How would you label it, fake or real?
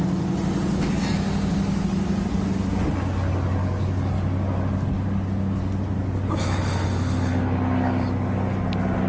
real